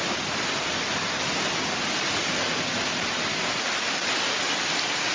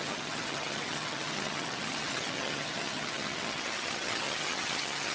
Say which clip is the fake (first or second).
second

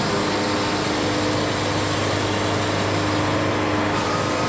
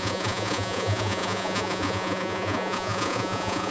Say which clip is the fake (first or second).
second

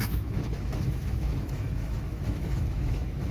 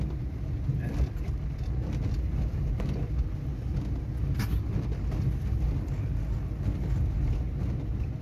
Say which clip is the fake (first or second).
first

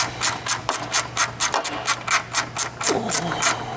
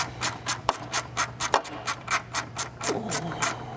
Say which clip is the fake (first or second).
second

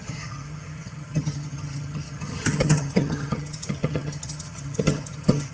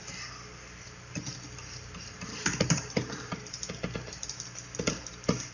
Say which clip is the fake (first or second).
first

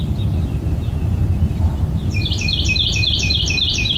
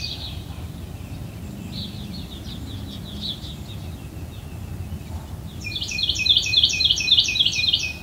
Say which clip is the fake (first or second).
first